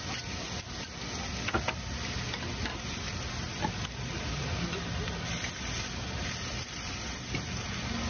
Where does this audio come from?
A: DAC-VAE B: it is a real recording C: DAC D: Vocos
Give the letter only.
B